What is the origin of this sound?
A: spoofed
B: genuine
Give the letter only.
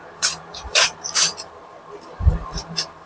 A